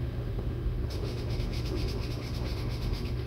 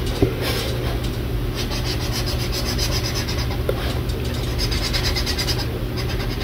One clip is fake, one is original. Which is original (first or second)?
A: second